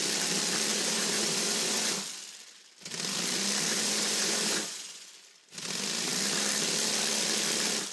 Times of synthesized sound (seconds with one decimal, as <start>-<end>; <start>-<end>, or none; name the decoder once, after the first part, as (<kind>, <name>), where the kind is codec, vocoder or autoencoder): 0.7-1.9 (vocoder, Vocos); 3.7-5.1